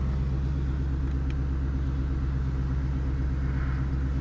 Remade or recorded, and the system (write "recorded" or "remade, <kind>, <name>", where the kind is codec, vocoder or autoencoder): recorded